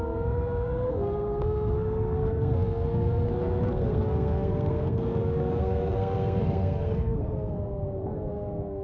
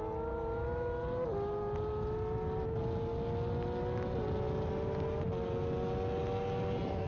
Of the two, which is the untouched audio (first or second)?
second